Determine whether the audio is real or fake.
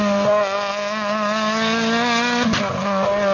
real